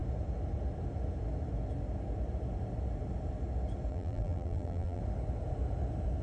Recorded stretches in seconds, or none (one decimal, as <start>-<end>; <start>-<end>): 0.0-3.9; 5.0-6.2